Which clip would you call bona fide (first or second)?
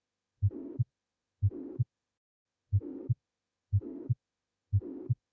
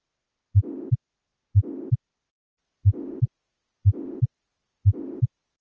second